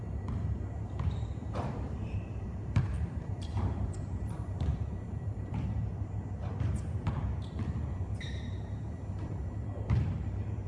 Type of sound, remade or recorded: remade